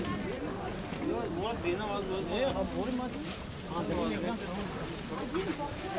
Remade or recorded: recorded